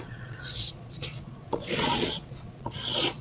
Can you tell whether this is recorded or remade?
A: remade